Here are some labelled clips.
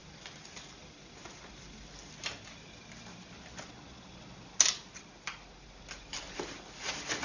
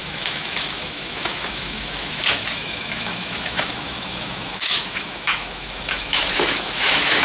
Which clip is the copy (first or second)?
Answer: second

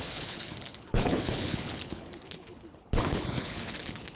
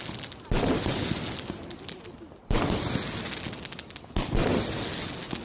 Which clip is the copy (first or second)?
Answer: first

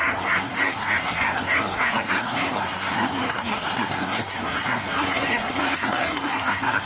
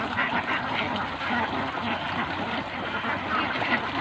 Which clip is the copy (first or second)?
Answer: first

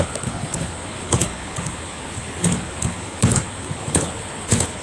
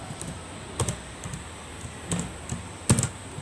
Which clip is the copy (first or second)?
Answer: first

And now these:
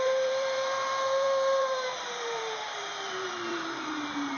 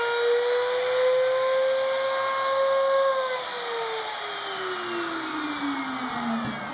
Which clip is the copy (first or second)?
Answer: first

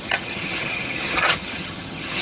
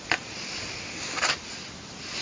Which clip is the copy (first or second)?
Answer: first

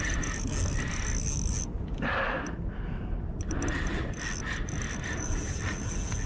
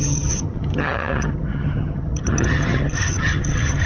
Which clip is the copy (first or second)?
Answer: second